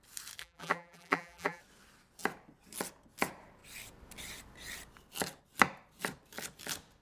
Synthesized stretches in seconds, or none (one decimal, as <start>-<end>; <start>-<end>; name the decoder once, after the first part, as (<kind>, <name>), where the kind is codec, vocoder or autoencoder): 0.4-1.6 (vocoder, BigVGAN v2)